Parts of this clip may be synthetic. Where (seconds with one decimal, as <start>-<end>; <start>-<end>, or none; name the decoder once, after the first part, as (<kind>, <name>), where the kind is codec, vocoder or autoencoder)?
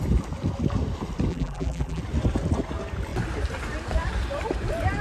1.3-2.0 (vocoder, BigVGAN v2)